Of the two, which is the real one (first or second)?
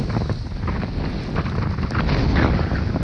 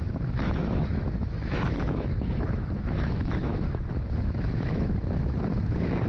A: first